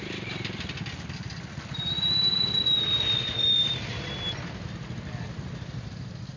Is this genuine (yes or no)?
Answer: yes